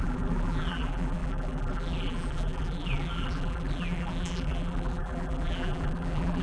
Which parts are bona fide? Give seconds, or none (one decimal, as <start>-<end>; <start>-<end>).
none